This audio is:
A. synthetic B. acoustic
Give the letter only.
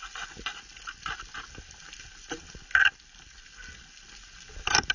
B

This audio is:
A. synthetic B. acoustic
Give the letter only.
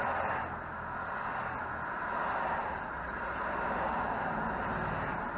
B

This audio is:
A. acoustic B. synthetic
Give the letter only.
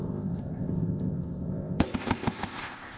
B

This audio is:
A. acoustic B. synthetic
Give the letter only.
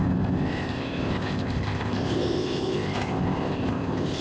B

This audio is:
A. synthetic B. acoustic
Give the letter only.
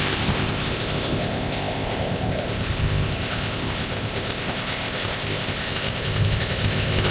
A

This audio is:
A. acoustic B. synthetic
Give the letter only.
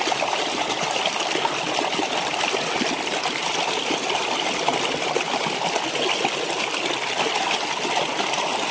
A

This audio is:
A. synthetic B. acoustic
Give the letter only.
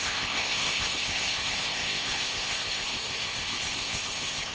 A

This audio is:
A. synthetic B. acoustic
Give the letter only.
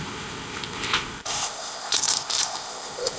A